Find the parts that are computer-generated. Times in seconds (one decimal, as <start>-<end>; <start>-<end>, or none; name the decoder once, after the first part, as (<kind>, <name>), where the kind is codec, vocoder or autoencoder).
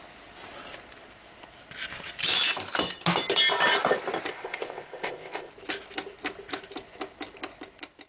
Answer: 4.3-5.5 (codec, ZipCodec)